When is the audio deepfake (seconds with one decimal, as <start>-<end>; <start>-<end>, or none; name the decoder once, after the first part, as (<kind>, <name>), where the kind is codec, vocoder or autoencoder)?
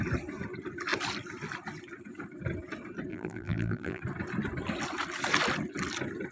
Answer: 3.1-4.0 (vocoder, BigVGAN v2)